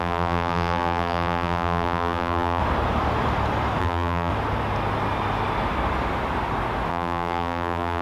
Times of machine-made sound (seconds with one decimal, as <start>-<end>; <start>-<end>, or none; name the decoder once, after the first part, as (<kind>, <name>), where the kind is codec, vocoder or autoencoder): 0.0-2.6 (vocoder, BigVGAN v2); 3.8-4.3; 6.9-8.0